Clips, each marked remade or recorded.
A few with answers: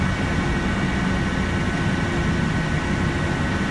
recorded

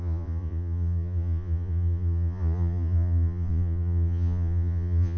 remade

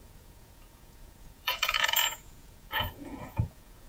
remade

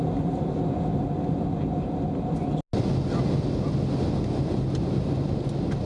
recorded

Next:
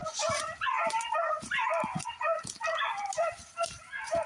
recorded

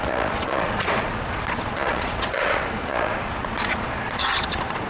remade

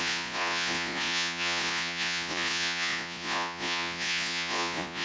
remade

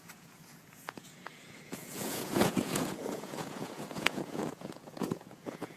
remade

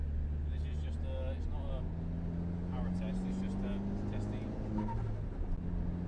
recorded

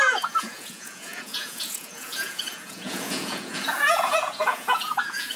remade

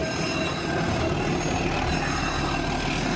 recorded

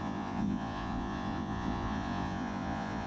remade